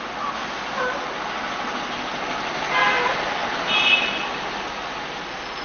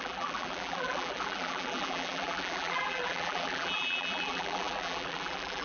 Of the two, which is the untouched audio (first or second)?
first